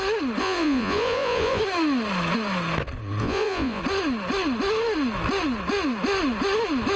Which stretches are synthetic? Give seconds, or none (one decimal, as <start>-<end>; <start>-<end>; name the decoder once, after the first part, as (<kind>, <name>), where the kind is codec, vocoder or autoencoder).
0.4-1.6 (vocoder, Vocos); 3.2-3.8